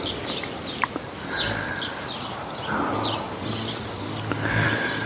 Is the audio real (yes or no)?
yes